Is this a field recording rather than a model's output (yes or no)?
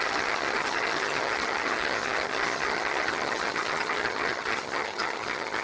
no